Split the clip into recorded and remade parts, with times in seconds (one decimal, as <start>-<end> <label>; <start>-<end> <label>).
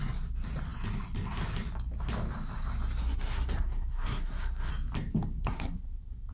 0.0-3.0 recorded; 3.0-4.7 remade; 4.7-5.4 recorded; 5.4-6.3 remade